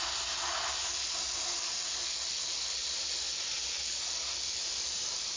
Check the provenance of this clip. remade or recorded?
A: recorded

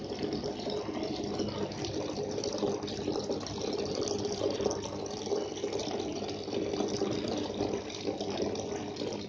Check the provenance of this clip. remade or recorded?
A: recorded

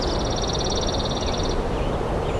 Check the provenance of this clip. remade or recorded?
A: recorded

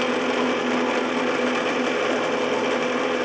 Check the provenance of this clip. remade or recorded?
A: recorded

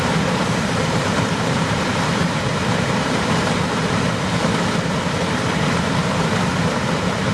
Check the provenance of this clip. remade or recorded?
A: remade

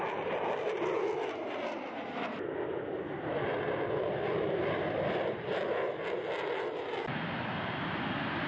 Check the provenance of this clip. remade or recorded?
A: recorded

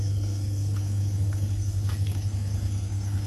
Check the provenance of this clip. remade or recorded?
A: remade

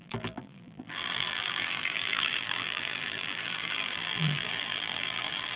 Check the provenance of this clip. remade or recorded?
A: remade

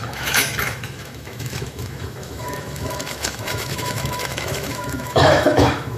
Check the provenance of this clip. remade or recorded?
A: remade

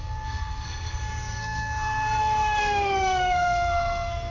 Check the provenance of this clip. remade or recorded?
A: remade